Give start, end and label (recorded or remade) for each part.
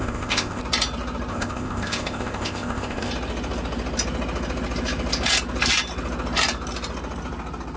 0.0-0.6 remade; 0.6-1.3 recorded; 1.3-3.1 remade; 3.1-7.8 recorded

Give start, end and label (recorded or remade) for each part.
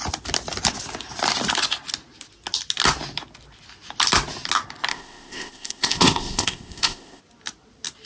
0.0-4.9 recorded; 4.9-7.2 remade; 7.2-8.1 recorded